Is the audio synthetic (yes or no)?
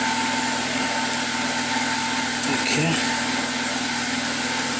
no